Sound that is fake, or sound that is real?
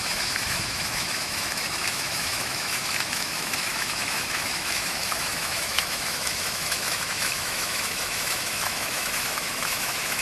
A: fake